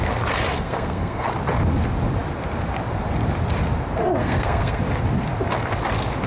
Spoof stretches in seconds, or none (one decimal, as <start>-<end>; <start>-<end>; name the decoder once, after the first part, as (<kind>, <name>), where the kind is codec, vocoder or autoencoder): 0.5-1.3 (codec, SNAC); 4.2-4.8